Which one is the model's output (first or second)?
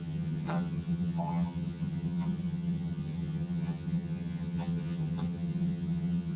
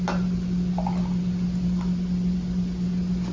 first